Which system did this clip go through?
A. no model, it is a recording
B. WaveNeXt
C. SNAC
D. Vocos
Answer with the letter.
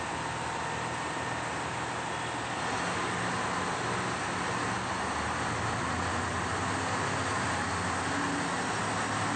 A